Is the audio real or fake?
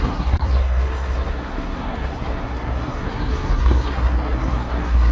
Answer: fake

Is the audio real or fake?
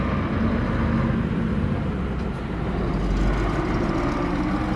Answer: real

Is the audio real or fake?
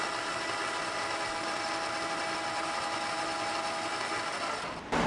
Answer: real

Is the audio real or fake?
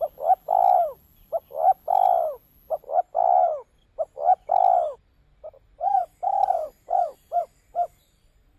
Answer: real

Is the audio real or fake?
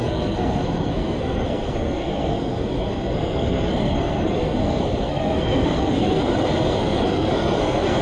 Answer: fake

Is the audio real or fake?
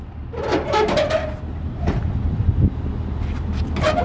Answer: real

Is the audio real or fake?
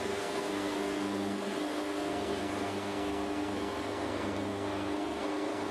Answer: fake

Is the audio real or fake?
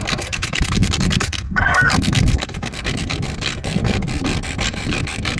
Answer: fake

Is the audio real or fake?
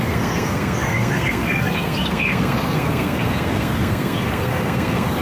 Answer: fake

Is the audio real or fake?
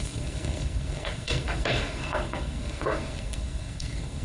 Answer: fake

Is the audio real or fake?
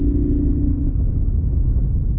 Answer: real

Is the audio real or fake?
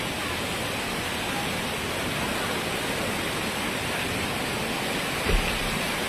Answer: real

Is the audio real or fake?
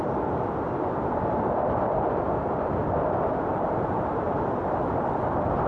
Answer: real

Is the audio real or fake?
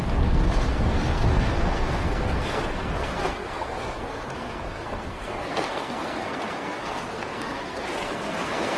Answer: fake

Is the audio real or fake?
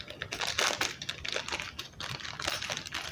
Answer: real